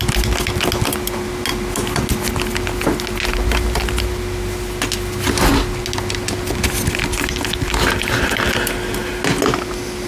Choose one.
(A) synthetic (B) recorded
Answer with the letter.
B